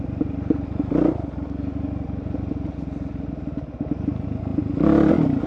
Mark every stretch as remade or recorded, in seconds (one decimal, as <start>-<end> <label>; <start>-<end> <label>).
0.0-5.5 recorded